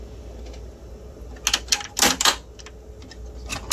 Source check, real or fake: real